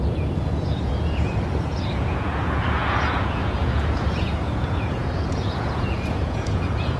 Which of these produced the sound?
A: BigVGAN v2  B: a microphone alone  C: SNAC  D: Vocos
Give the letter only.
D